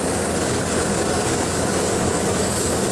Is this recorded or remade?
remade